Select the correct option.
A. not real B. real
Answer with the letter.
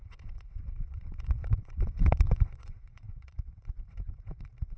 A